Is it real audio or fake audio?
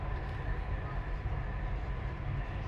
real